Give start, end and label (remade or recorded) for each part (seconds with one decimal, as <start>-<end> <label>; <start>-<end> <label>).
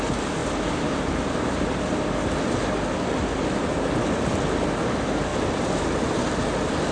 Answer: 0.0-6.9 recorded